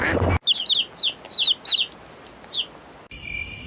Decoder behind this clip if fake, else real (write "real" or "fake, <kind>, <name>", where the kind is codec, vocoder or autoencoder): real